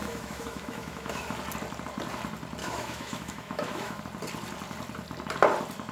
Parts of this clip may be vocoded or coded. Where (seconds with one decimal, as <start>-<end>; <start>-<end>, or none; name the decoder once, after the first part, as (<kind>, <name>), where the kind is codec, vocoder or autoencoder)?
0.0-1.2 (autoencoder, DAC-VAE); 2.6-4.0